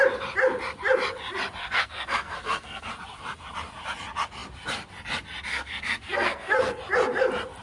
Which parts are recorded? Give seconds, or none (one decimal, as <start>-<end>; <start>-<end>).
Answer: 0.0-1.6; 2.9-5.5; 6.8-7.6